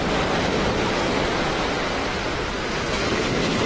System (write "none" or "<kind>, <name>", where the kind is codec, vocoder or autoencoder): none